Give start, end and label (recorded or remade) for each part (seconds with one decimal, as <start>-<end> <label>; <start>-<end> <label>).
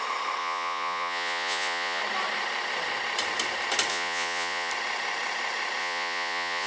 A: 0.0-0.4 recorded; 0.4-2.0 remade; 2.0-3.9 recorded; 3.9-4.7 remade; 4.7-5.8 recorded; 5.8-6.7 remade